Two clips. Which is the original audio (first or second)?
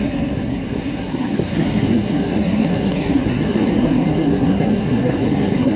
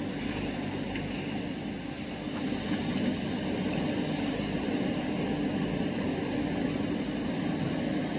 second